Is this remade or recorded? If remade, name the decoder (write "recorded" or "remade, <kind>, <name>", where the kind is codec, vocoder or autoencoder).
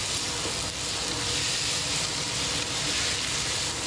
recorded